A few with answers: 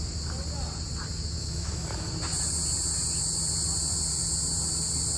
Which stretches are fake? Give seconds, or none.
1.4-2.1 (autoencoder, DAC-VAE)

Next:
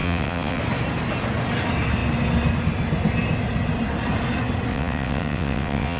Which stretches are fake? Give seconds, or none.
0.0-0.6 (vocoder, WaveNeXt); 4.7-6.0

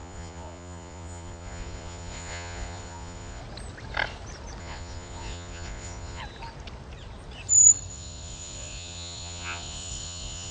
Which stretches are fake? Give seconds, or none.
0.0-3.4 (vocoder, Vocos); 4.6-6.2; 7.9-10.5

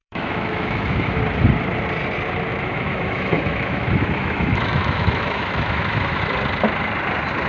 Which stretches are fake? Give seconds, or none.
0.0-1.2 (autoencoder, DAC-VAE); 2.5-6.2

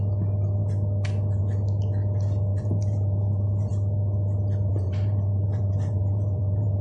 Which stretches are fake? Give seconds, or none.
2.5-3.7 (vocoder, BigVGAN v2); 4.7-6.8

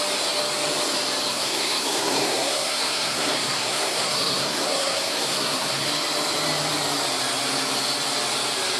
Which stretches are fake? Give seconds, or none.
1.3-5.9 (codec, SNAC)

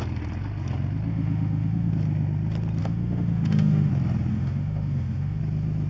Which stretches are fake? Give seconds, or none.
1.1-1.9 (autoencoder, DAC-VAE); 2.8-3.9; 4.3-5.4

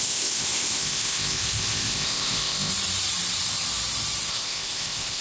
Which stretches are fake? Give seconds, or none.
0.0-2.7 (codec, ZipCodec); 4.3-5.2